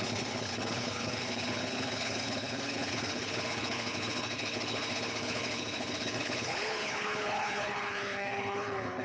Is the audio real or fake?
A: fake